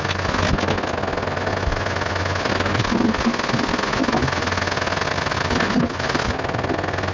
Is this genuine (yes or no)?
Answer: yes